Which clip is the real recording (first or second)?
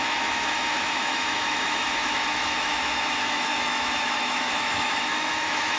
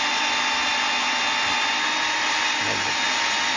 second